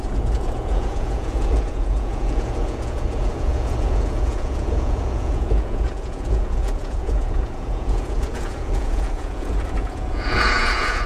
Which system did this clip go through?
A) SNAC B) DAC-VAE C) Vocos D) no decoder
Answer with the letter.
C